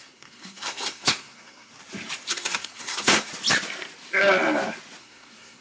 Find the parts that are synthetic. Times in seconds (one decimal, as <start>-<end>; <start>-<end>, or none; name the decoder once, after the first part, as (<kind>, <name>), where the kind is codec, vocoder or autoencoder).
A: 0.0-1.7 (codec, SNAC); 2.3-3.3; 5.0-5.6